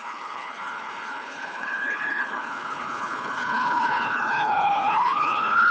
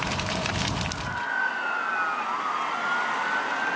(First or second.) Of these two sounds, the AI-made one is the first